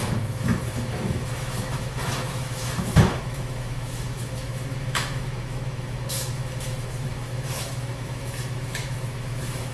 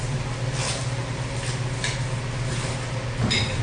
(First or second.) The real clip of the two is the second